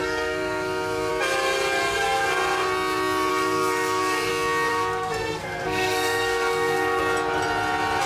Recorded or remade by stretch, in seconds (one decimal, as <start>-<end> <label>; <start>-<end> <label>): 0.0-1.1 remade; 1.1-3.3 recorded; 3.3-4.3 remade; 4.3-4.7 recorded; 4.7-7.0 remade; 7.0-8.1 recorded